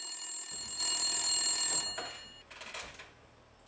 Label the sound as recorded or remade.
recorded